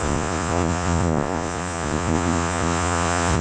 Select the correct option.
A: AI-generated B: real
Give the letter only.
A